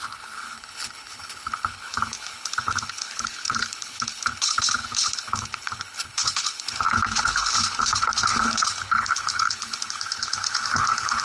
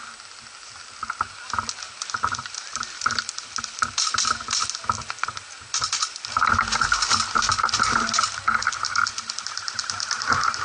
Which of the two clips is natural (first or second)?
second